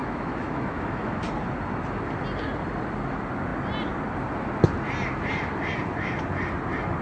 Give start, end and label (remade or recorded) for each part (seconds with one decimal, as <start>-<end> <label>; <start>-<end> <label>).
0.0-1.3 remade; 1.3-7.0 recorded